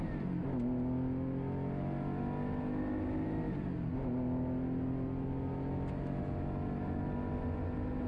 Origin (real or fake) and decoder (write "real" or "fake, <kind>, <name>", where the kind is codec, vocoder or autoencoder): real